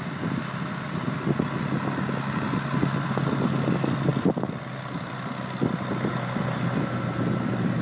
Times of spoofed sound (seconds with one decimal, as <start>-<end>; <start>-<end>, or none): none

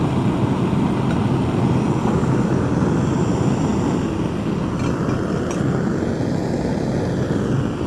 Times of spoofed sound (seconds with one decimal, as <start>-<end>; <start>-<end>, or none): 2.0-2.7